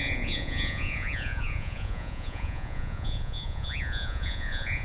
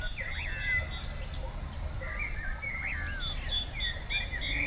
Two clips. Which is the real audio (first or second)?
second